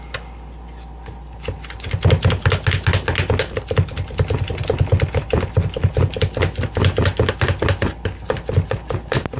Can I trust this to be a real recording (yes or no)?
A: yes